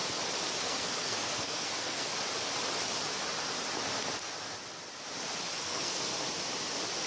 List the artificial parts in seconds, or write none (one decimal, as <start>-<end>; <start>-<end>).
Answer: 0.6-2.1; 5.6-6.1